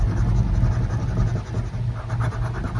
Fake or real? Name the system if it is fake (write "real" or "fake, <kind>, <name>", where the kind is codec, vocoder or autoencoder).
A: real